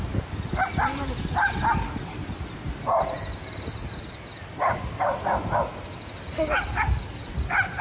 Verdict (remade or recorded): recorded